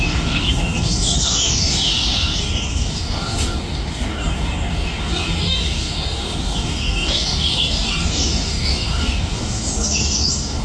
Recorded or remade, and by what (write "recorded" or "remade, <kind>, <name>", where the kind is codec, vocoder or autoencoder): remade, codec, DAC